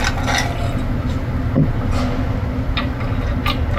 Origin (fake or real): real